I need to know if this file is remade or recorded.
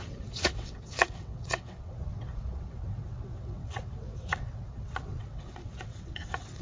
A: remade